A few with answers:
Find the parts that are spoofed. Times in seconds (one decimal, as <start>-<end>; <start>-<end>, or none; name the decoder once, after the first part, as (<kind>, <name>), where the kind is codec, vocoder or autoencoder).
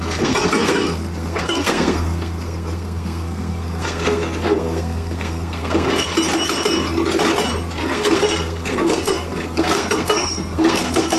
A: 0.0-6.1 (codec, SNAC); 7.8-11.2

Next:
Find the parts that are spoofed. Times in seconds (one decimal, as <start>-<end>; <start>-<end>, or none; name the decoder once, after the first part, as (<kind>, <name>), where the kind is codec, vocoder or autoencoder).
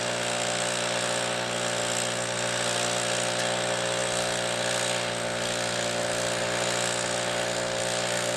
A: none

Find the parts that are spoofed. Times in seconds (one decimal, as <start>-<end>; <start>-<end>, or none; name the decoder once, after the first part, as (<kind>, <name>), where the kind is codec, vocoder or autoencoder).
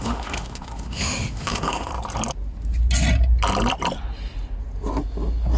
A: 0.0-1.9 (autoencoder, DAC-VAE)